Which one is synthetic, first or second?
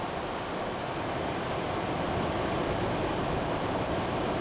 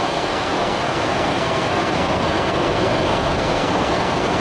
second